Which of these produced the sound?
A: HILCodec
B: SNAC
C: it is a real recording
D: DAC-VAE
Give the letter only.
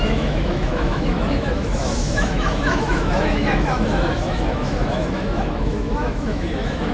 D